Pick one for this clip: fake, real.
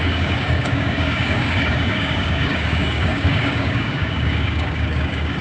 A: fake